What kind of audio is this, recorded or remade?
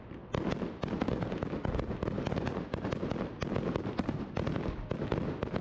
recorded